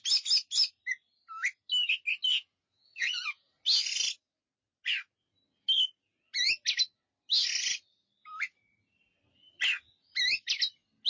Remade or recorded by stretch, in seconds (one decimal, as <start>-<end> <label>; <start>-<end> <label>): 0.0-2.3 recorded; 2.3-3.4 remade; 3.4-11.1 recorded